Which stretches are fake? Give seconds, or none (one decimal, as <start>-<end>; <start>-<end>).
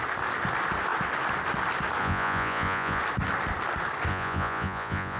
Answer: 2.0-3.0; 4.1-5.2